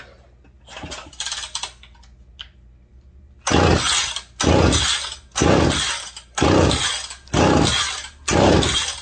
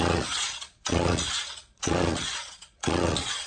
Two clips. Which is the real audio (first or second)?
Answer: first